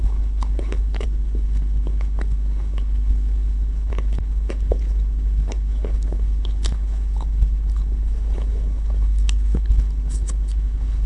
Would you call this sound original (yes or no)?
no